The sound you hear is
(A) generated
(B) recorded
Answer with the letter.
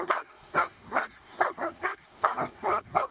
A